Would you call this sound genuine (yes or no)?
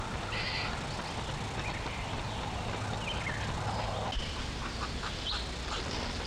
yes